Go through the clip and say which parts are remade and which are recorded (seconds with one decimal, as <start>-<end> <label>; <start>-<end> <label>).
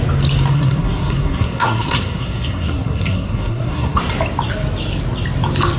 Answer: 0.0-0.5 recorded; 0.5-4.0 remade; 4.0-5.8 recorded